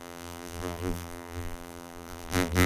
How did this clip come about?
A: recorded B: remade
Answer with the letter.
B